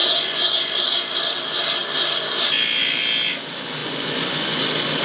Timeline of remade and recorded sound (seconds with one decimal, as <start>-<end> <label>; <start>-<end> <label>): 0.0-0.7 remade; 0.7-3.8 recorded; 3.8-4.6 remade; 4.6-5.0 recorded

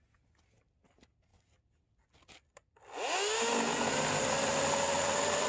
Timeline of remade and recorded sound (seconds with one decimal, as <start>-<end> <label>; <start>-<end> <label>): 0.0-5.5 recorded

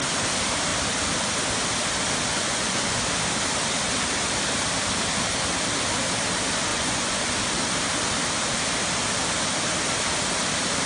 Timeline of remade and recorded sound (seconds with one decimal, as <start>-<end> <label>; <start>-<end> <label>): 0.0-2.3 recorded; 2.3-3.0 remade; 3.0-6.7 recorded; 6.7-7.3 remade; 7.3-10.9 recorded

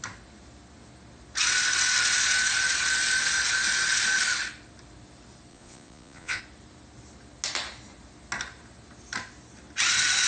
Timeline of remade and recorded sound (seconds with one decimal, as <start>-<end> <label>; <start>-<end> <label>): 0.0-5.5 recorded; 5.5-6.4 remade; 6.4-10.3 recorded

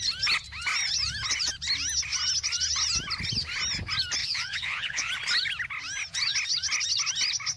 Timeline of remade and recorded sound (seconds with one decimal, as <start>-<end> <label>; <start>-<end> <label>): 0.0-4.2 recorded; 4.2-5.1 remade; 5.1-7.6 recorded

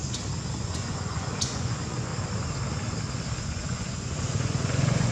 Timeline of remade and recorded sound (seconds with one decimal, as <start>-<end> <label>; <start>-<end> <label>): 0.0-0.6 recorded; 0.6-2.1 remade; 2.1-3.4 recorded; 3.4-5.1 remade

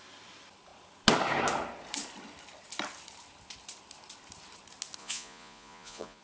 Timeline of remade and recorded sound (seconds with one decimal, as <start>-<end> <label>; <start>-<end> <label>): 0.0-5.0 recorded; 5.0-6.2 remade